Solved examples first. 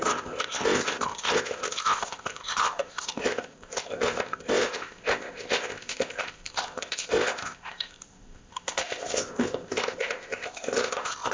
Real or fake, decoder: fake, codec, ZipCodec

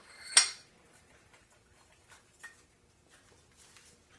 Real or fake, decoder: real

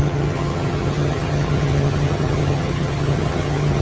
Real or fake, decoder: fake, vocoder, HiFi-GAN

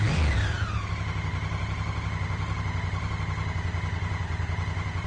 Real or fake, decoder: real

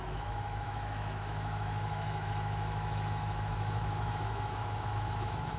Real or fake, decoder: fake, autoencoder, DAC-VAE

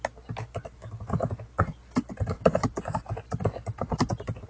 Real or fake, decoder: real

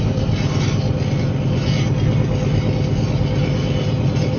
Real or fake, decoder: real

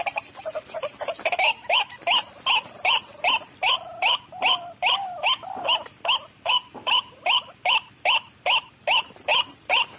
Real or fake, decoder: real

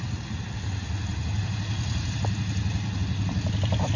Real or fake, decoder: real